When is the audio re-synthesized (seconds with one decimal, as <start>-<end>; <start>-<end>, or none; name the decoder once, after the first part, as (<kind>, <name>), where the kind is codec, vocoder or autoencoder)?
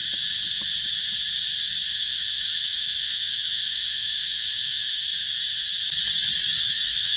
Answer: 1.9-5.1 (autoencoder, DAC-VAE); 6.6-7.2